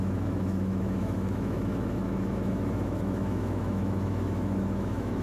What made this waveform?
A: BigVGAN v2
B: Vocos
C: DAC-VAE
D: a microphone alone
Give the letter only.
C